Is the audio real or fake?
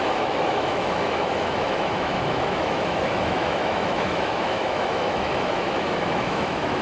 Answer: fake